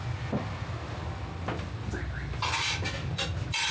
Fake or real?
real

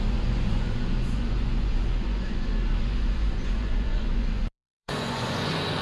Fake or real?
fake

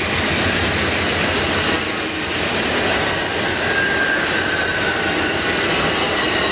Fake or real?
real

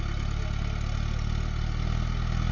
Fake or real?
real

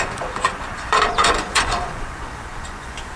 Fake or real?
fake